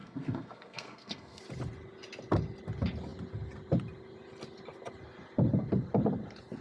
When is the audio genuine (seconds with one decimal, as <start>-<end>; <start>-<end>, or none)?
1.4-6.6